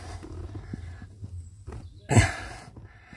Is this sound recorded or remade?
recorded